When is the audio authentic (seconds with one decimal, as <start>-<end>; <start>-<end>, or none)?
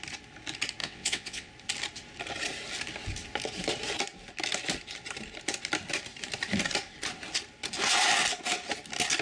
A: 0.0-0.8; 1.5-9.2